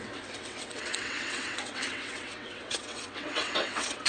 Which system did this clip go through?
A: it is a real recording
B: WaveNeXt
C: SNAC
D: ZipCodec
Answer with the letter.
B